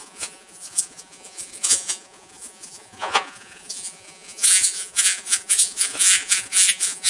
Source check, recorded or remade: remade